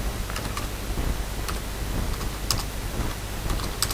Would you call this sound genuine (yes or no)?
yes